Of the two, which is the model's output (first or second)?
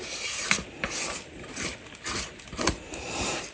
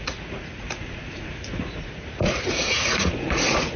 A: second